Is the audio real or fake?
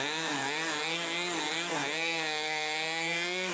fake